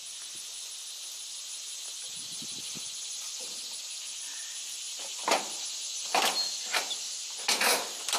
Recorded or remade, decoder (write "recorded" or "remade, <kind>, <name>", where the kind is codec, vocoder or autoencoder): recorded